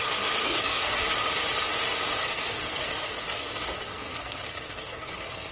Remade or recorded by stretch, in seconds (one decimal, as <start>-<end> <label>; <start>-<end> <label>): 0.0-0.4 recorded; 0.4-1.0 remade; 1.0-2.2 recorded; 2.2-3.5 remade; 3.5-3.9 recorded; 3.9-5.5 remade